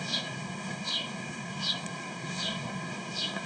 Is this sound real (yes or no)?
no